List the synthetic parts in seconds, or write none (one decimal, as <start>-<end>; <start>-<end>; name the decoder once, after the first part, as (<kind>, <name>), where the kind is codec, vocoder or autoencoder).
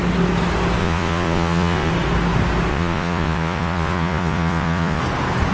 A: 0.8-1.9 (vocoder, Vocos); 2.7-5.0